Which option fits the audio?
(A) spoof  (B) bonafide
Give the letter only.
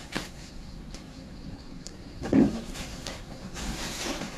A